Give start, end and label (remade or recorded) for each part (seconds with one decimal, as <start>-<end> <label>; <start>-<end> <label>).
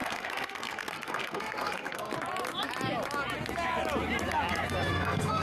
0.0-2.1 remade; 2.1-4.9 recorded; 4.9-5.4 remade